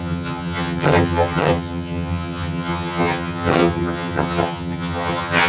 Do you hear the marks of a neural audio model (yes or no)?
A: yes